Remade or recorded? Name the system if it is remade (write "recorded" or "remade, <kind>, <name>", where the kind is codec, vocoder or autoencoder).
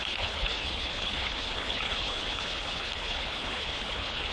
remade, codec, HILCodec